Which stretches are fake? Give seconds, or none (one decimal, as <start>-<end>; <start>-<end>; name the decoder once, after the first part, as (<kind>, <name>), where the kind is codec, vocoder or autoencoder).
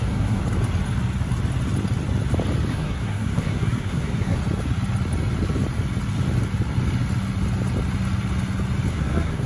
0.0-0.4 (codec, SNAC); 2.7-4.4; 8.9-9.5